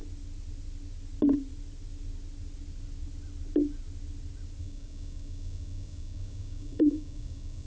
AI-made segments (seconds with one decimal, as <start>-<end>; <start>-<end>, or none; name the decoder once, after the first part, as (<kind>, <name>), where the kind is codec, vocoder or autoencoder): 4.6-7.7 (codec, DAC)